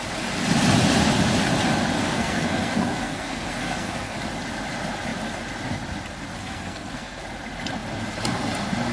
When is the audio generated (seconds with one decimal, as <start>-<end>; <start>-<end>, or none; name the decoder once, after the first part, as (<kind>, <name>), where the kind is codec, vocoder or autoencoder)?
2.0-4.2 (codec, SNAC); 6.3-7.2